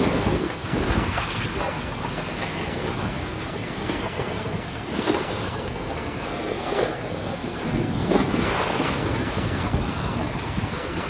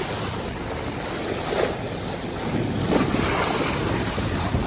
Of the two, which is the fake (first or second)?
first